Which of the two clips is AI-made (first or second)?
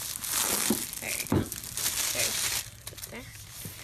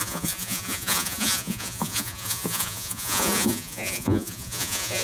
second